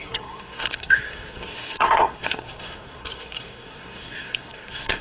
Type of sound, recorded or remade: remade